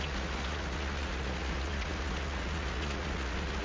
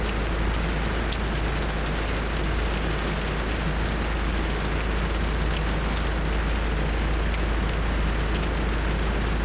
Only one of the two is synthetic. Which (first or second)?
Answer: first